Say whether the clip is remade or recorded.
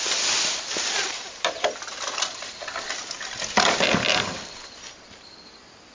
recorded